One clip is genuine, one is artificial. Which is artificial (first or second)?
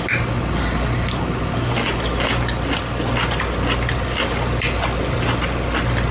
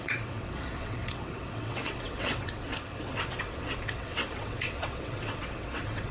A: second